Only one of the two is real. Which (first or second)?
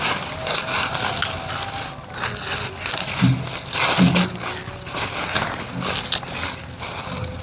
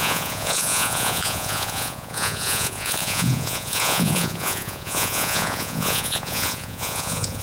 first